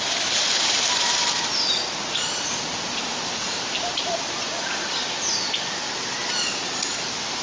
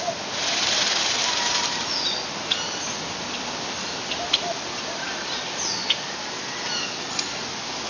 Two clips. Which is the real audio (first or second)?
second